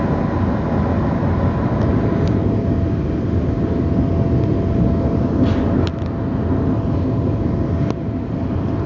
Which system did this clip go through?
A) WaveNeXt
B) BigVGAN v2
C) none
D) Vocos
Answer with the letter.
C